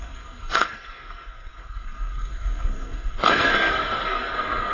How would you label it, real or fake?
fake